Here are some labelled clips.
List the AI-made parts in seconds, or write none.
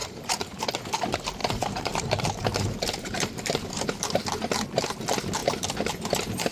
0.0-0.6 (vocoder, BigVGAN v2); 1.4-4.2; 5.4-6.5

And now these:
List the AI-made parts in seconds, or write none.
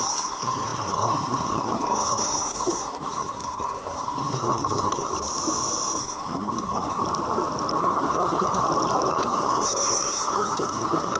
0.0-5.1 (codec, SNAC); 6.0-7.0; 7.8-8.6; 9.1-11.2